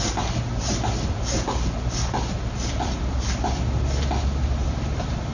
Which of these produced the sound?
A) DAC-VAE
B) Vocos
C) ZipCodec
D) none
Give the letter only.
D